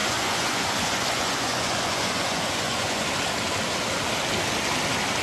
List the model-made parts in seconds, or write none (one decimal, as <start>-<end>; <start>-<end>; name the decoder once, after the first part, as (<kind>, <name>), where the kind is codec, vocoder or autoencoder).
0.0-3.1 (vocoder, Vocos)

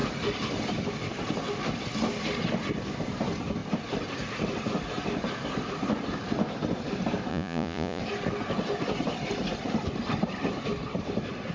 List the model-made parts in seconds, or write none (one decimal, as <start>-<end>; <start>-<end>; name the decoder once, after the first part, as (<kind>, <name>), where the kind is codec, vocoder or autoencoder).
7.3-8.0 (vocoder, Vocos)

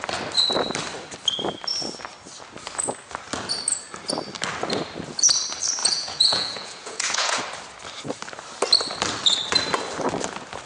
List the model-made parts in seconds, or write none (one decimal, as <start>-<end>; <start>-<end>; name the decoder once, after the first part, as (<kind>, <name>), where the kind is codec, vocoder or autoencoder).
5.8-7.4 (vocoder, Vocos)

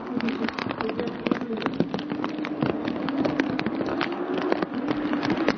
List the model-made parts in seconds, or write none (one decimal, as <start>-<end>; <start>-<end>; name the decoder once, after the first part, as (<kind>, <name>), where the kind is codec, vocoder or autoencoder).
none

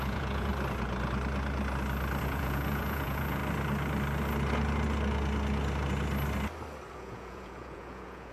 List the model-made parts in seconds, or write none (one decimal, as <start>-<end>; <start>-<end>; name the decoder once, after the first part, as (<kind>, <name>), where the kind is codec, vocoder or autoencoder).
0.0-0.5 (vocoder, Vocos); 2.2-3.4; 6.9-8.3

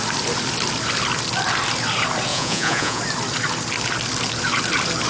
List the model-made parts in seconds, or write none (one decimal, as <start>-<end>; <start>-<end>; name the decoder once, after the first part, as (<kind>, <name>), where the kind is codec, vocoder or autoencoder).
2.3-3.0 (vocoder, Vocos)

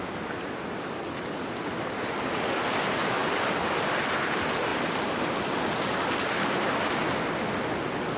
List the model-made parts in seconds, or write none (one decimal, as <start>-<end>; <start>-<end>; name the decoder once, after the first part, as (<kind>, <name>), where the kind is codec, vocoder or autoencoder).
none